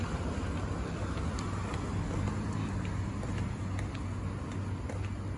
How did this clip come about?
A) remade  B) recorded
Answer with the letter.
B